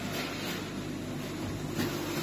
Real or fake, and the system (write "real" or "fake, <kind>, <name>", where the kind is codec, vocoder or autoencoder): real